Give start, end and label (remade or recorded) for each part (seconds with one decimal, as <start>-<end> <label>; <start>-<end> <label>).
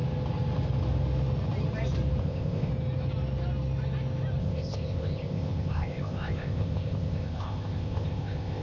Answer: 0.0-2.2 recorded; 2.2-2.7 remade; 2.7-4.4 recorded; 4.4-8.6 remade